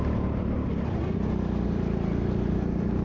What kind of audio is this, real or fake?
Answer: real